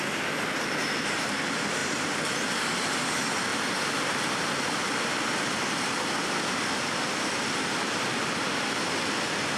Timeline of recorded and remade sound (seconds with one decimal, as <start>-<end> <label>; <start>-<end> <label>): 0.0-3.5 recorded; 3.5-4.6 remade; 4.6-9.6 recorded